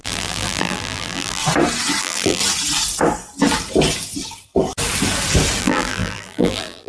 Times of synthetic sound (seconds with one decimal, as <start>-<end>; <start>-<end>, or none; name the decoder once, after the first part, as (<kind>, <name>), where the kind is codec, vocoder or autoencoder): 0.0-1.4 (vocoder, BigVGAN v2); 2.0-2.4; 5.6-6.9